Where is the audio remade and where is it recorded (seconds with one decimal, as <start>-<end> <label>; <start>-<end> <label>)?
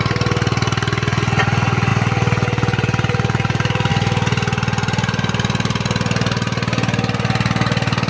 0.0-8.1 recorded